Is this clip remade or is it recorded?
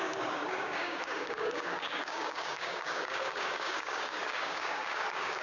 remade